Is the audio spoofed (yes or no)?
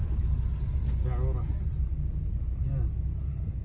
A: no